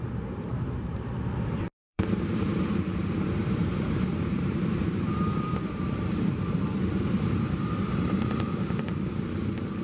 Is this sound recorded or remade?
remade